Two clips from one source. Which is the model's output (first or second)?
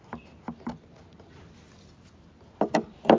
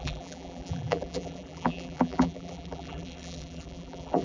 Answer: second